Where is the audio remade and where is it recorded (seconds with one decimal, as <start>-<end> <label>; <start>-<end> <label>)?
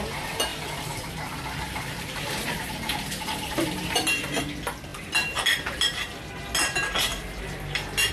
0.0-0.5 recorded; 0.5-4.4 remade; 4.4-7.1 recorded; 7.1-8.1 remade